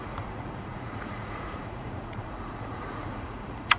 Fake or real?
fake